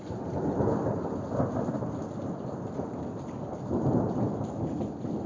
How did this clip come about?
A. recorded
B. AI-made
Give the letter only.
A